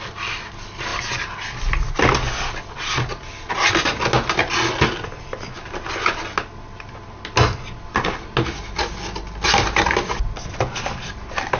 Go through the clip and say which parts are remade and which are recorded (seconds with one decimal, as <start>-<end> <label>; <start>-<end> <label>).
0.0-11.6 recorded